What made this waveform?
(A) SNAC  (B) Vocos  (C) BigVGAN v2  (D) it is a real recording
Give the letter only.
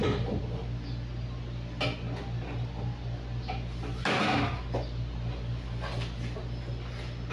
D